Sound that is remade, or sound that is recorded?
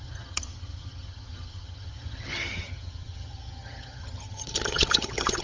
remade